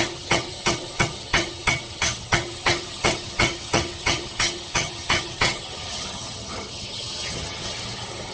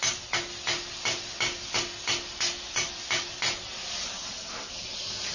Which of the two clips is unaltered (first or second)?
second